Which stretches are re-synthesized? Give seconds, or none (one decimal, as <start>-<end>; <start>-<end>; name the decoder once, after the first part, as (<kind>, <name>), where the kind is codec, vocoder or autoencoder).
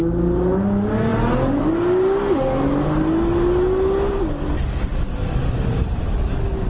5.4-6.0 (vocoder, BigVGAN v2)